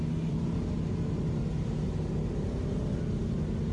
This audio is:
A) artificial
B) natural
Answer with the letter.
B